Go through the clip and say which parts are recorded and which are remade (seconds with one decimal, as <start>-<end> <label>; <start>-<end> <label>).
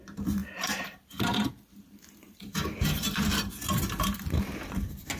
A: 0.0-0.4 recorded; 0.4-3.5 remade; 3.5-5.2 recorded